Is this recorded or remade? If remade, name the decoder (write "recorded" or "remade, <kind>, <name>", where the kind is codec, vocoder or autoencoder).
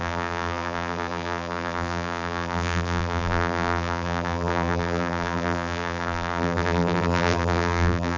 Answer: remade, vocoder, BigVGAN v2